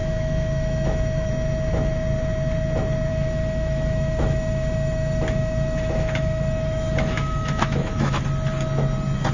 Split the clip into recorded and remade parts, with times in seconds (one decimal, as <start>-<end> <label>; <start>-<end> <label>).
0.0-1.3 remade; 1.3-3.1 recorded; 3.1-8.2 remade; 8.2-9.3 recorded